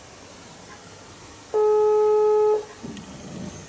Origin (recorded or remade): recorded